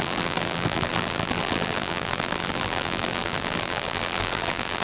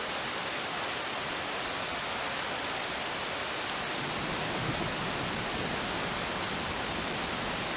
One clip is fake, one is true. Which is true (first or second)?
second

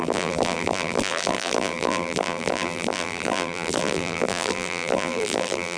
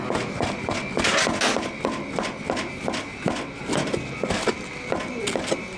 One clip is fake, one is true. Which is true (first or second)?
second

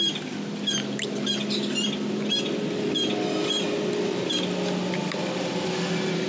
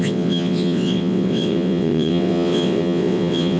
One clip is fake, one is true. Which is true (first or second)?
first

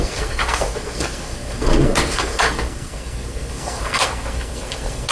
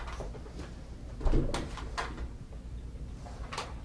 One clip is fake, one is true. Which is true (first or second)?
second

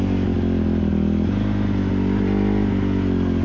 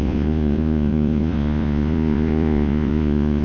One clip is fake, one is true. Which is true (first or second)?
first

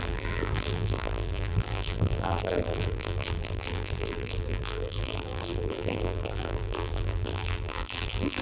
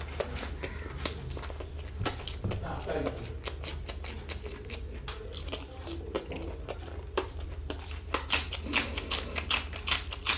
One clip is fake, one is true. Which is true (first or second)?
second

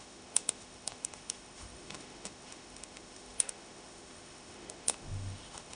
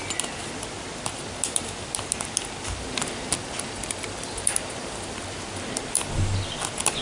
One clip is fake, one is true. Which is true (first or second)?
second